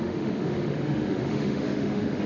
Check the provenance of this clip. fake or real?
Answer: fake